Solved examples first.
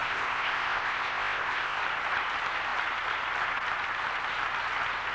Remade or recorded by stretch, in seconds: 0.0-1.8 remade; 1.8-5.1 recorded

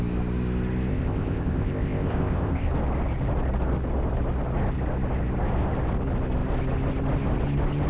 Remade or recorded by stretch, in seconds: 0.0-0.9 recorded; 0.9-2.7 remade; 2.7-7.9 recorded

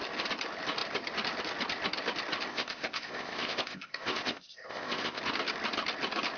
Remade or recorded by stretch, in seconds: 0.0-2.5 recorded; 2.5-5.2 remade; 5.2-6.4 recorded

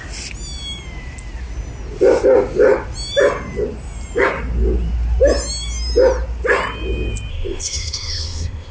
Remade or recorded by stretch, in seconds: 0.0-7.3 recorded; 7.3-8.7 remade

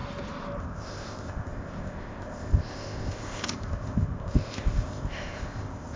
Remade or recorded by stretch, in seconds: 0.0-0.6 recorded; 0.6-6.0 remade

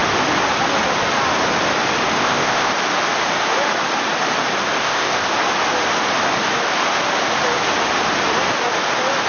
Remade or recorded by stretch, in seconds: 0.0-2.2 recorded; 2.2-2.7 remade; 2.7-4.8 recorded; 4.8-5.3 remade; 5.3-9.3 recorded